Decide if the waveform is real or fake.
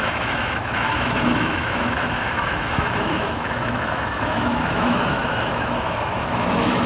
fake